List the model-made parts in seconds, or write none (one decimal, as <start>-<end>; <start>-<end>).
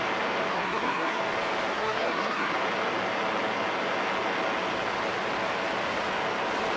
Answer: 0.5-1.2; 1.7-2.5